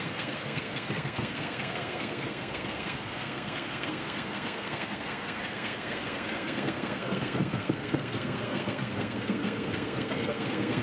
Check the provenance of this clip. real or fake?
fake